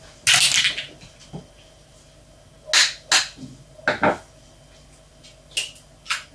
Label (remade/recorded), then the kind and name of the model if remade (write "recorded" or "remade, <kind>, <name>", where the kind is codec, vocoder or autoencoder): recorded